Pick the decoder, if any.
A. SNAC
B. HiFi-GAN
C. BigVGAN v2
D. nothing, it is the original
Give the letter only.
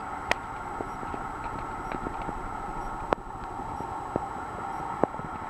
D